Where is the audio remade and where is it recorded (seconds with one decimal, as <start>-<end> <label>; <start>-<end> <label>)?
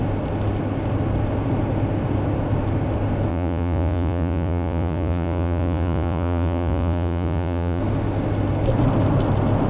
0.0-3.3 recorded; 3.3-7.8 remade; 7.8-9.7 recorded